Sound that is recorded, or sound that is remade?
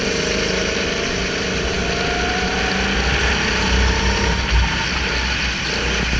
recorded